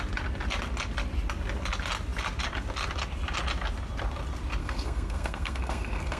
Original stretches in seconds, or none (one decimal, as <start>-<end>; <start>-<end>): 0.0-4.6